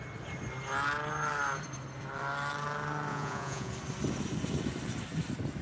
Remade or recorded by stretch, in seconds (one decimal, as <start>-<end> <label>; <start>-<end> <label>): 0.0-3.1 recorded; 3.1-3.7 remade; 3.7-5.6 recorded